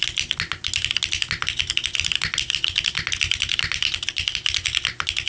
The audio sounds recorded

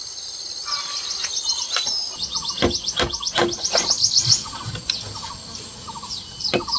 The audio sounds recorded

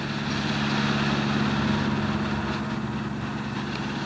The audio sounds recorded